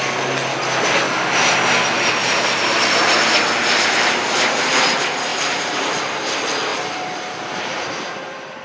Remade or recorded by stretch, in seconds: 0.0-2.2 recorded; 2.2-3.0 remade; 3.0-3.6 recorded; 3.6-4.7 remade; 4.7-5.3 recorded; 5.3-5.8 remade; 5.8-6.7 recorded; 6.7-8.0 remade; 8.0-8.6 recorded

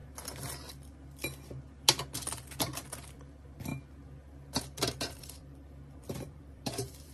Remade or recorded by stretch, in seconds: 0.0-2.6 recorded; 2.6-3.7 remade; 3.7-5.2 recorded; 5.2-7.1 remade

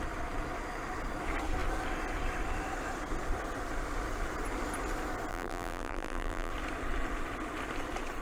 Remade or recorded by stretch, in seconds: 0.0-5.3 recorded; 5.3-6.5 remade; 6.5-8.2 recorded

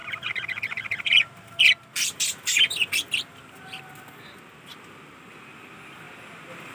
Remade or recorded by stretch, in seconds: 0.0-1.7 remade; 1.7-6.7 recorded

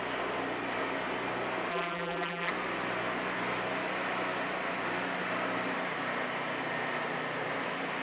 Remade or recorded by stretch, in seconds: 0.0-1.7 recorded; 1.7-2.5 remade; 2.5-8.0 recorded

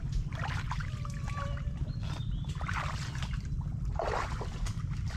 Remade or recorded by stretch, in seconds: 0.0-5.2 recorded

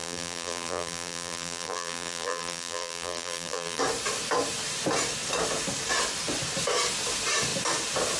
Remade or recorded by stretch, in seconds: 0.0-3.8 remade; 3.8-8.2 recorded

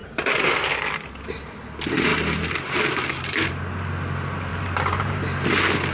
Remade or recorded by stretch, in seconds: 0.0-0.7 remade; 0.7-2.1 recorded; 2.1-3.5 remade; 3.5-4.5 recorded; 4.5-5.2 remade; 5.2-5.9 recorded